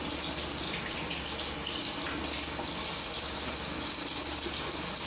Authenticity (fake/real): real